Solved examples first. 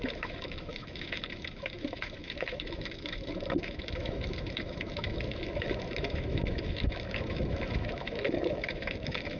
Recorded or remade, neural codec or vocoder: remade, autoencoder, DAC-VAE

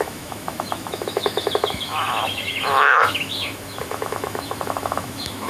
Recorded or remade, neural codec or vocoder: remade, autoencoder, DAC-VAE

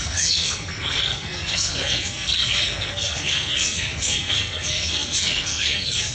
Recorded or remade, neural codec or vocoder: remade, codec, SNAC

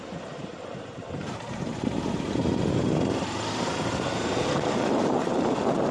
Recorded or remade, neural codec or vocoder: remade, vocoder, BigVGAN v2